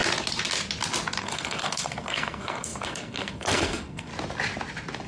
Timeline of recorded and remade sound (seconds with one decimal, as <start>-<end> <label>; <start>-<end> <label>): 0.0-1.2 recorded; 1.2-4.1 remade; 4.1-5.1 recorded